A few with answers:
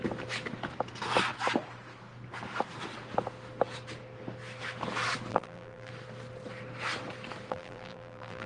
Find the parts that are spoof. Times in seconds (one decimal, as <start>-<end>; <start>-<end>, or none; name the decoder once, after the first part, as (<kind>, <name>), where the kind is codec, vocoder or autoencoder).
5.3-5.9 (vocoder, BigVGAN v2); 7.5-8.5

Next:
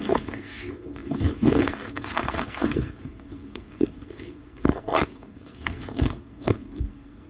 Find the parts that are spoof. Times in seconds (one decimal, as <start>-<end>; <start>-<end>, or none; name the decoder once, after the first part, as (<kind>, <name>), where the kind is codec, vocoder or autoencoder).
0.0-7.3 (codec, SNAC)

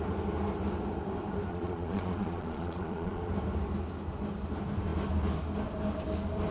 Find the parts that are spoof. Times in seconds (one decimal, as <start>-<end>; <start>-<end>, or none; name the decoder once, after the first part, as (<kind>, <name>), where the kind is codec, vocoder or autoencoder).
1.5-3.3 (vocoder, Vocos)